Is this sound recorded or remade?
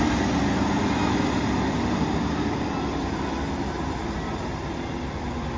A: recorded